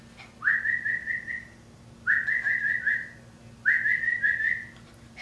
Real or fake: real